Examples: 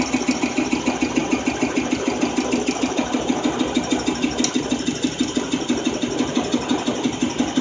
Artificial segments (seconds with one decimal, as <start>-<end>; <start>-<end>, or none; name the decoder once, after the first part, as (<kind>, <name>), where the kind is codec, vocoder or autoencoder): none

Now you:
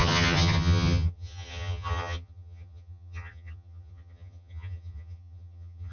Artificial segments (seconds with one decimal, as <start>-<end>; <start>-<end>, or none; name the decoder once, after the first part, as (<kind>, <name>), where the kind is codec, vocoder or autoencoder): 0.0-5.9 (vocoder, HiFi-GAN)

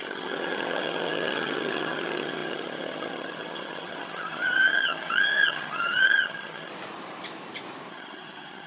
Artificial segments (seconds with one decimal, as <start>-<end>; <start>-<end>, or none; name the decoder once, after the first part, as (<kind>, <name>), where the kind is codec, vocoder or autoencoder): 0.0-6.7 (vocoder, HiFi-GAN); 7.9-8.7

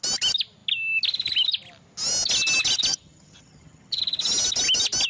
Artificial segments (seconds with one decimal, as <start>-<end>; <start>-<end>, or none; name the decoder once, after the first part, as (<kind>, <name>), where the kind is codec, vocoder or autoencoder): 2.9-4.0 (vocoder, HiFi-GAN)